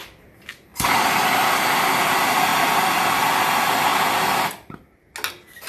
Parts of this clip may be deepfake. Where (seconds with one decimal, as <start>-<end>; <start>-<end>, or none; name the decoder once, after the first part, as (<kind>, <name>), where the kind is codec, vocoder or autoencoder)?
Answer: none